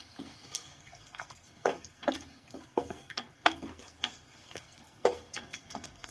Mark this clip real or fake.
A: fake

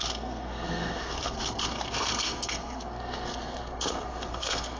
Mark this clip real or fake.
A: fake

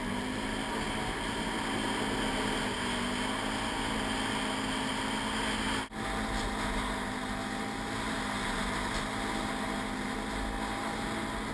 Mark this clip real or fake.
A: real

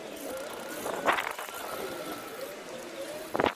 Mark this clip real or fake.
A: real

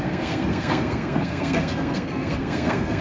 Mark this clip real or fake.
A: fake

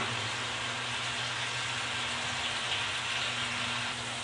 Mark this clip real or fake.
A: real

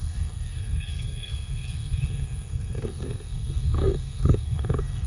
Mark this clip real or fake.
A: fake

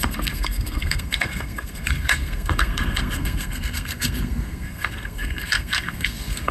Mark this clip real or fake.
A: fake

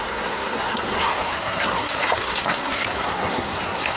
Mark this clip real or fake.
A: fake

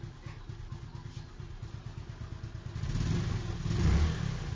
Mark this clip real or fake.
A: real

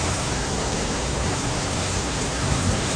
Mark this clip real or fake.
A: fake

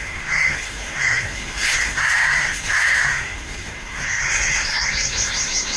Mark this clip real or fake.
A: fake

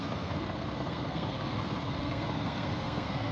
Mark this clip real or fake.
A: fake